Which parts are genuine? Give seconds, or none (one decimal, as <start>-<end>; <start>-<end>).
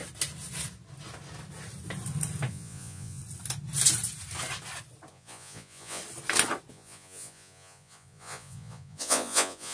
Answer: 0.0-2.5; 3.2-5.1; 6.0-6.7